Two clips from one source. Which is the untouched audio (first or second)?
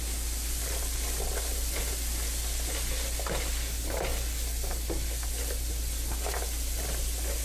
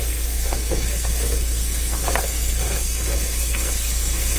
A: first